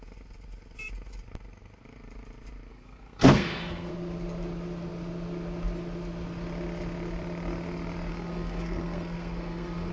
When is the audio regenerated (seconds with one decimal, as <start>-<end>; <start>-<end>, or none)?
2.7-3.9; 8.1-9.9